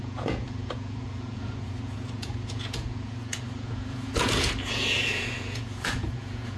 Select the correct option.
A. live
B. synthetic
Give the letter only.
B